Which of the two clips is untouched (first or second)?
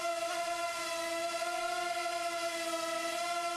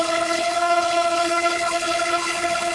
first